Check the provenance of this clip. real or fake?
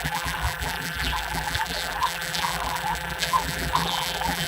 fake